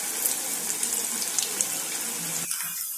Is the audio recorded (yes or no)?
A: yes